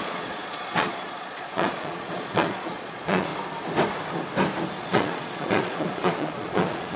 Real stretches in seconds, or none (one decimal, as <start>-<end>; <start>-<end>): 3.3-4.8